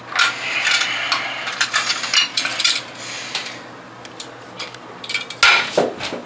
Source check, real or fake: real